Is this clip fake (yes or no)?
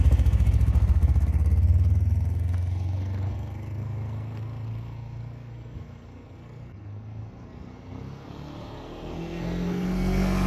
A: yes